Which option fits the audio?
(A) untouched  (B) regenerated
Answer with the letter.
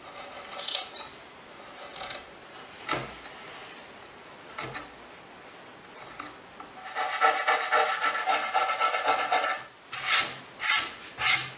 A